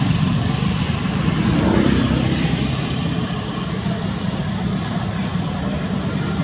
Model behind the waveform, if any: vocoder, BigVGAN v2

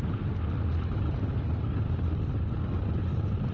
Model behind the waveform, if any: none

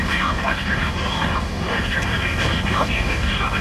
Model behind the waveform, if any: codec, DAC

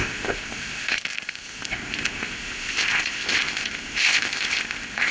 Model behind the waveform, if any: codec, ZipCodec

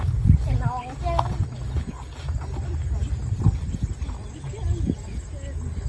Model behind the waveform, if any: none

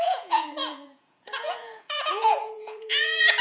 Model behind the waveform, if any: vocoder, Vocos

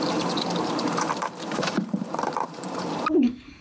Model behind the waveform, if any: vocoder, BigVGAN v2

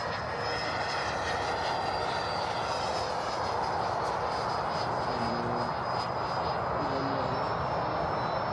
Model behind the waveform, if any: none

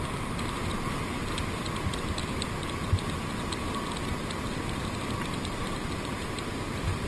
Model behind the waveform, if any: none